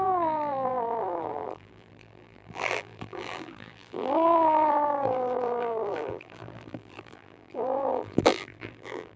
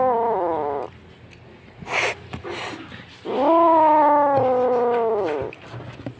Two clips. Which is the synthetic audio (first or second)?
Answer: first